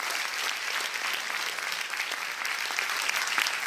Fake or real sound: real